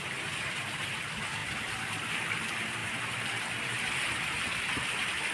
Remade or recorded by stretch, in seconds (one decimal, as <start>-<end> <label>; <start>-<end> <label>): 0.0-5.3 recorded